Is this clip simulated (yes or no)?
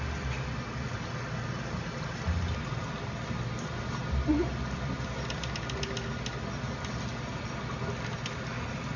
no